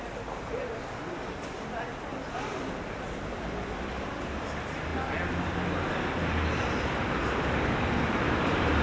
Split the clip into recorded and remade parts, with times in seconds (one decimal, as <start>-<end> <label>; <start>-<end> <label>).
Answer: 0.0-8.8 recorded